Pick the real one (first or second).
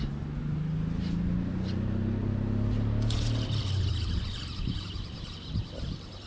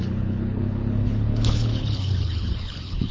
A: first